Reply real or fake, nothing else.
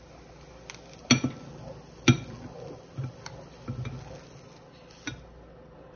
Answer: real